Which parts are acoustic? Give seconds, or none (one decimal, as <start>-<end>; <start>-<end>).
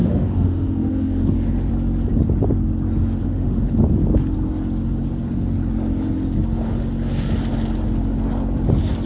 1.7-3.2; 3.7-9.1